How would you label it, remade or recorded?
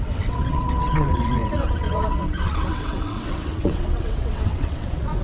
remade